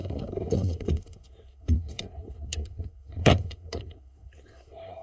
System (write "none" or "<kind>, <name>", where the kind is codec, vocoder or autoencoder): codec, SNAC